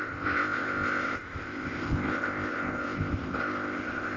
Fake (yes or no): yes